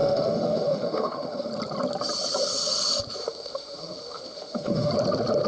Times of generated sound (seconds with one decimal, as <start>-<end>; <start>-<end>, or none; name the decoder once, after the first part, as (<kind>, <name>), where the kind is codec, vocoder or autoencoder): 0.0-1.5 (autoencoder, DAC-VAE); 3.2-4.9